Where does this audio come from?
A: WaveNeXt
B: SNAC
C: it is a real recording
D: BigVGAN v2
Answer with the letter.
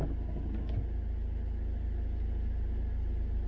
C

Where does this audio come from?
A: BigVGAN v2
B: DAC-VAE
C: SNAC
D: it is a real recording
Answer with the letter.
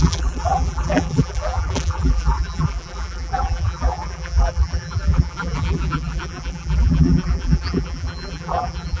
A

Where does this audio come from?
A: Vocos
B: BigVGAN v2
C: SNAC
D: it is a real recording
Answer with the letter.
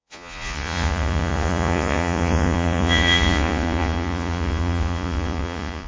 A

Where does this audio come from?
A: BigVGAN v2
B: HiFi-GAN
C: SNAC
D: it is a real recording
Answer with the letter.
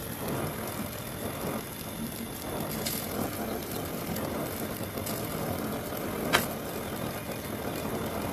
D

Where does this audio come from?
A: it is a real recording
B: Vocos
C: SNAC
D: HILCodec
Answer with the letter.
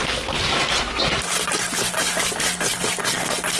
A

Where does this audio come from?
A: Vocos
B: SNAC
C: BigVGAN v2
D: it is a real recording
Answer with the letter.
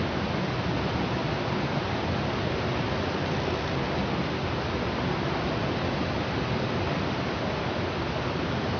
D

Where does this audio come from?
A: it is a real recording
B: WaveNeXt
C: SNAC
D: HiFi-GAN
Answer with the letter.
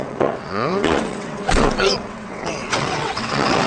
B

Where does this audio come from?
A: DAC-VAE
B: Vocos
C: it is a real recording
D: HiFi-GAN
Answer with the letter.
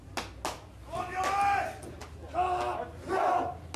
C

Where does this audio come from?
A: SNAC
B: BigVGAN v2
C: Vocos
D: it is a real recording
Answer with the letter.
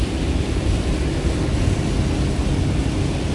D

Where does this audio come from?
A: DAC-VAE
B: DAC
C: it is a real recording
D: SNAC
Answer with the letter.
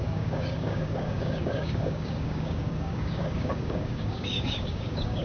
B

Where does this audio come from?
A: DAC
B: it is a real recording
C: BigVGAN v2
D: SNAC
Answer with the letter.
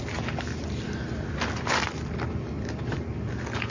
B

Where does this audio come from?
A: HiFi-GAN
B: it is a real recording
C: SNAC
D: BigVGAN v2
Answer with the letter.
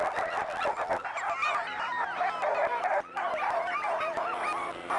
B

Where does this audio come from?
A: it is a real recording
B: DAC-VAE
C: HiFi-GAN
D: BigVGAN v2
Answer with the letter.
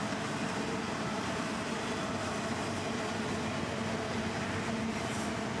A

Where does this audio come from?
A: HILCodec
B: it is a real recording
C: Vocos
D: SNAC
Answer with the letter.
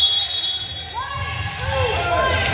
B